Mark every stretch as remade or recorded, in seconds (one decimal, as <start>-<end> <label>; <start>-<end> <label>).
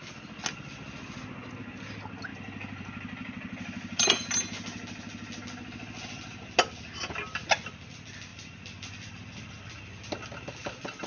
0.0-2.3 recorded; 2.3-4.1 remade; 4.1-8.3 recorded; 8.3-9.8 remade; 9.8-11.1 recorded